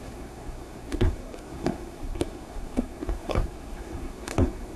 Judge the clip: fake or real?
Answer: fake